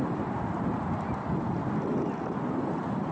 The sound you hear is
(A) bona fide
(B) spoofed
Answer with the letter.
A